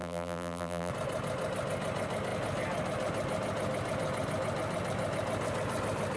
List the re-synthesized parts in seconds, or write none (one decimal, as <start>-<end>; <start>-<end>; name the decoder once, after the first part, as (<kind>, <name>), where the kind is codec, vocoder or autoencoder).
0.0-0.9 (vocoder, BigVGAN v2)